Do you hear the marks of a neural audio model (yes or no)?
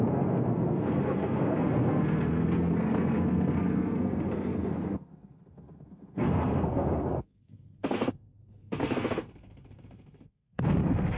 yes